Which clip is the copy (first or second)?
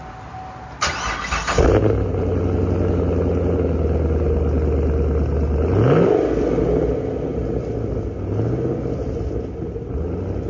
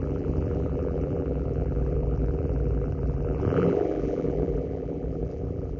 second